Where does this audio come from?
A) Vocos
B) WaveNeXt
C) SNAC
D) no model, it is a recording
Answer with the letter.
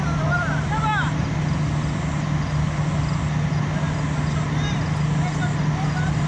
D